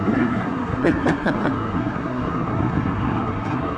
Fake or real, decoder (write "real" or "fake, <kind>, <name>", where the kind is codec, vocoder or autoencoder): fake, codec, SNAC